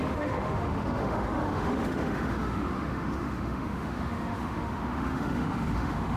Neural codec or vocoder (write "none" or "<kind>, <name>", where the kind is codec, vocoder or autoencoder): autoencoder, DAC-VAE